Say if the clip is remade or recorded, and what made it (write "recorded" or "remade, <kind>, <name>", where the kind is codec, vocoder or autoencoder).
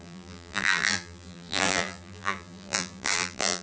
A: remade, vocoder, BigVGAN v2